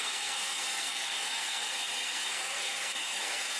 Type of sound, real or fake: fake